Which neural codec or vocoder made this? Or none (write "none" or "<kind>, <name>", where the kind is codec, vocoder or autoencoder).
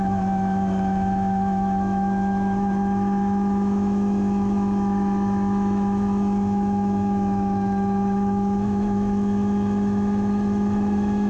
autoencoder, DAC-VAE